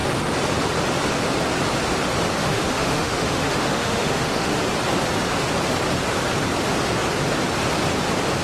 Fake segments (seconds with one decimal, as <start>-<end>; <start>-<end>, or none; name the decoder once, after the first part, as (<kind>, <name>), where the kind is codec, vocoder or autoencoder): 2.4-4.6 (autoencoder, DAC-VAE)